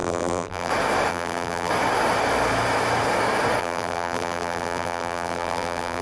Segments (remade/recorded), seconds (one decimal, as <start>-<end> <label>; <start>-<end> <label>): 0.0-0.7 remade; 0.7-1.1 recorded; 1.1-1.7 remade; 1.7-3.6 recorded; 3.6-6.0 remade